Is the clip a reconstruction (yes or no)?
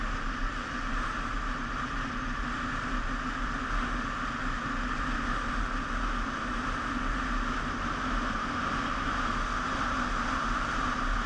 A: no